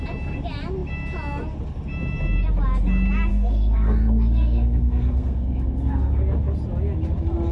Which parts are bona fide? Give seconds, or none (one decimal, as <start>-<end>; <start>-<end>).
0.0-3.3; 6.2-7.5